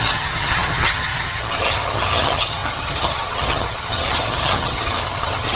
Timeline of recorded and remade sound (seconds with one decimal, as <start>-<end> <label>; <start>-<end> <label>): 0.0-5.6 remade